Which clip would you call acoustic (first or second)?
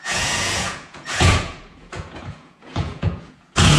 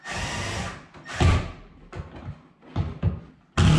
second